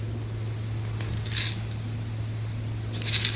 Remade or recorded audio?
recorded